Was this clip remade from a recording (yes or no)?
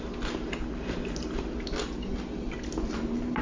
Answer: no